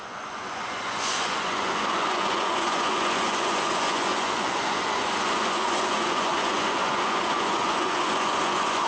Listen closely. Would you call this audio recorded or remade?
remade